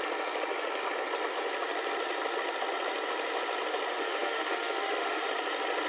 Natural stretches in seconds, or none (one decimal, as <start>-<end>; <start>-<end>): 0.0-3.9; 5.3-5.9